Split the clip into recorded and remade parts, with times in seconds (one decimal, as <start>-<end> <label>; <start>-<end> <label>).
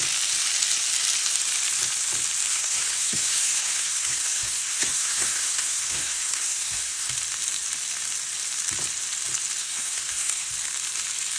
0.0-2.5 recorded; 2.5-7.1 remade; 7.1-9.6 recorded; 9.6-10.5 remade; 10.5-11.4 recorded